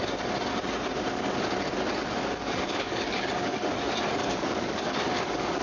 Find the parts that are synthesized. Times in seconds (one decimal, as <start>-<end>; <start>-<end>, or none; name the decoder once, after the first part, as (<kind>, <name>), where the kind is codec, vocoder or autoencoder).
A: 2.2-3.7 (codec, DAC); 4.2-5.6